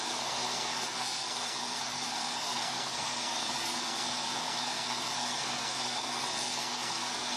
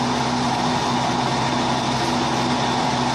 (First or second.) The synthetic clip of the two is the first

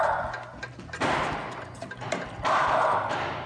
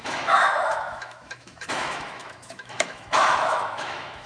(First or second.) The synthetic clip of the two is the second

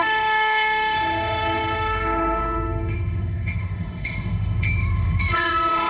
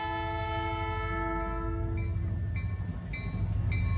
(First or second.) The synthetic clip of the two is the first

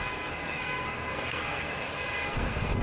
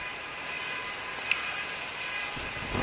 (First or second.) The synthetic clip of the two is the first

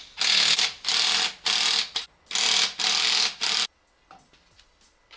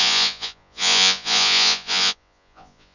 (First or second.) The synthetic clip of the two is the second